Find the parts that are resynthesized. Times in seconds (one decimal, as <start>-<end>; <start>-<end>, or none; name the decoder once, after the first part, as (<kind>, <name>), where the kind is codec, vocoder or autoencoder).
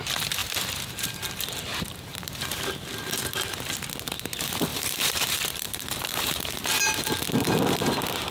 1.7-2.6 (vocoder, BigVGAN v2); 4.7-6.8